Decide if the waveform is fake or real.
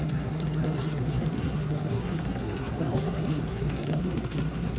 fake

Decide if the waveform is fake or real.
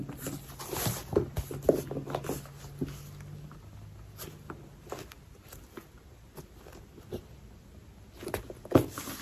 real